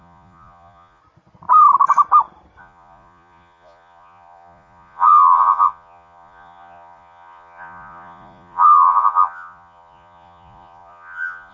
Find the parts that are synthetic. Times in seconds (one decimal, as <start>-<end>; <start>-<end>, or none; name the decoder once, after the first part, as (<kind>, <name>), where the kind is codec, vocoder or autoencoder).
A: 0.0-1.0 (vocoder, Vocos); 2.6-11.5